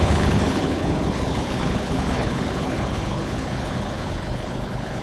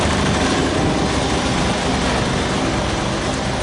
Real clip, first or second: second